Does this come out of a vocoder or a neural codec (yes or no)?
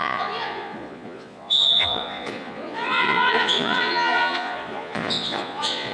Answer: yes